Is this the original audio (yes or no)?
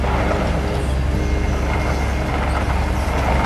yes